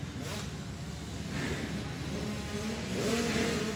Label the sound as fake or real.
real